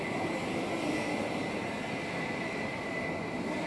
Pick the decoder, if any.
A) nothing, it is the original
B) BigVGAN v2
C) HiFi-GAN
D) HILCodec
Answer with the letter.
A